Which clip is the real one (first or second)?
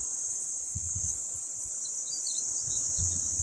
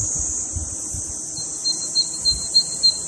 second